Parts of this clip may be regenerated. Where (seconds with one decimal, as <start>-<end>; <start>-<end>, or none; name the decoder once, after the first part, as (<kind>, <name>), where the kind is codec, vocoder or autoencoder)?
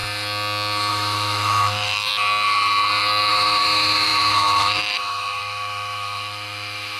0.9-2.1 (autoencoder, DAC-VAE); 3.3-7.0